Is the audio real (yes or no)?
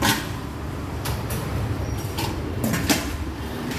no